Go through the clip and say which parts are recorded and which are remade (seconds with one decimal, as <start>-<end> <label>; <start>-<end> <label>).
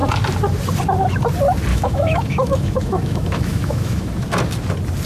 0.0-1.7 recorded; 1.7-4.1 remade; 4.1-5.1 recorded